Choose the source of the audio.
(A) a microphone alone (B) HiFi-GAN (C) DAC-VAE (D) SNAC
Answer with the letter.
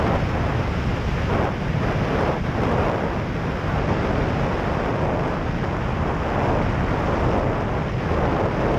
A